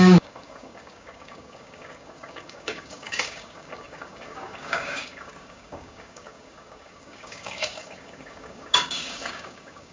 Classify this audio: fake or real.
fake